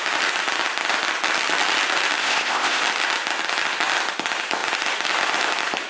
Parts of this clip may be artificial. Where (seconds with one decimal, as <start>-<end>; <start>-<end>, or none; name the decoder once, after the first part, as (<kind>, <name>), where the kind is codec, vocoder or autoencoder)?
2.2-2.8 (codec, ZipCodec)